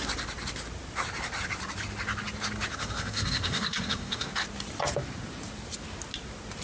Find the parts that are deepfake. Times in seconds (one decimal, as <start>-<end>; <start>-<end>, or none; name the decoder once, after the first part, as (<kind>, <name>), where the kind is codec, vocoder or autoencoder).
2.7-4.3 (codec, SNAC)